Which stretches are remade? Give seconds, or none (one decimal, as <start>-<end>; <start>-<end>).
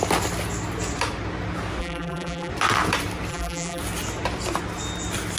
1.8-2.5; 3.3-3.8